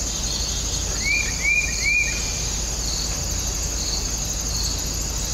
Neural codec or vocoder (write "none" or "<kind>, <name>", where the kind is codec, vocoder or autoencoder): none